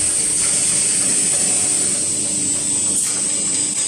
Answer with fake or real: real